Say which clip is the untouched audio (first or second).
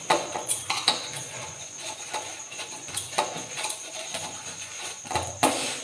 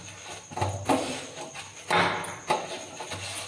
second